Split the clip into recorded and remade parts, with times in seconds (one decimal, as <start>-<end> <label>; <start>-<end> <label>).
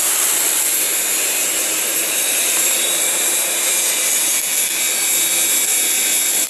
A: 0.0-0.7 recorded; 0.7-3.9 remade; 3.9-6.5 recorded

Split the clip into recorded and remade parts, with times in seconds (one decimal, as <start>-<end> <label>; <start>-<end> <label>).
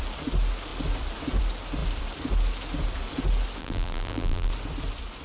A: 0.0-3.6 recorded; 3.6-4.5 remade; 4.5-5.2 recorded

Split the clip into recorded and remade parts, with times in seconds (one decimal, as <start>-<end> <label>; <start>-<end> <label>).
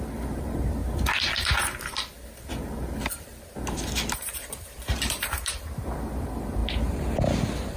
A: 0.0-0.8 remade; 0.8-3.2 recorded; 3.2-7.8 remade